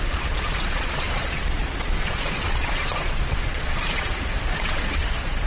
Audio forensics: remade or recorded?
remade